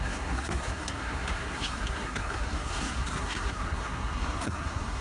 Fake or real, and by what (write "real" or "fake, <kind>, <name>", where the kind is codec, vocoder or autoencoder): fake, codec, SNAC